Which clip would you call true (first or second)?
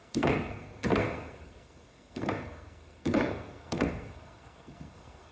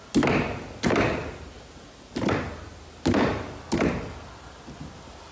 second